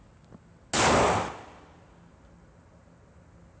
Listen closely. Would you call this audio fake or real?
real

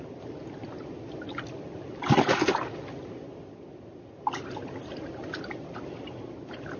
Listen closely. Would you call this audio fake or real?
real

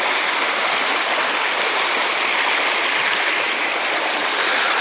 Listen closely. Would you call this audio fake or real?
real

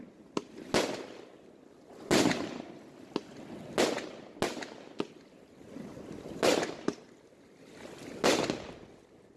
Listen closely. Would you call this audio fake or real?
real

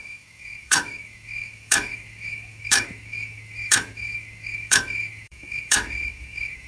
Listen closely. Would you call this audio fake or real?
fake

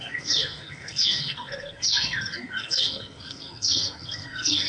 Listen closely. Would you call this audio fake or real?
fake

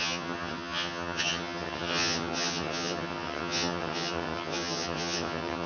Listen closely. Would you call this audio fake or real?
fake